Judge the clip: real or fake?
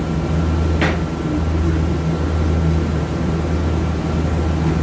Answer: real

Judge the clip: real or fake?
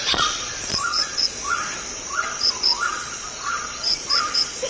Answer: fake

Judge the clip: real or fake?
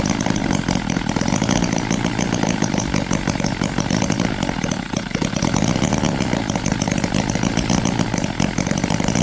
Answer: real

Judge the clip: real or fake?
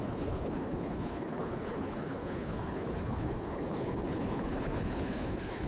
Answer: fake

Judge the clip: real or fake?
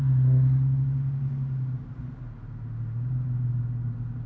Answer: real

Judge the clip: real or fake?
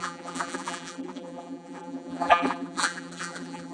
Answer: fake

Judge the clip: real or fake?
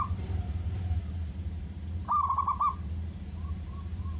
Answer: fake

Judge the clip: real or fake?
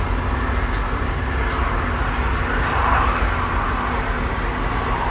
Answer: real